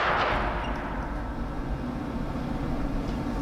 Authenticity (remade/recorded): recorded